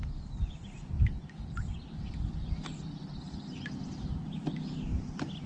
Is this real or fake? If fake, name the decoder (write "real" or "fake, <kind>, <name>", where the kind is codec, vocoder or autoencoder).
real